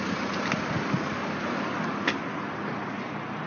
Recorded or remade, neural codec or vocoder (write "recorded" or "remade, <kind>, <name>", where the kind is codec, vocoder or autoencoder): recorded